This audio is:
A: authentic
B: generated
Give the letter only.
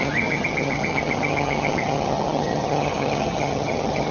B